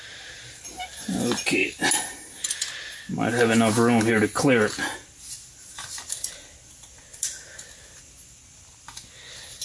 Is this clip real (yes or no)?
yes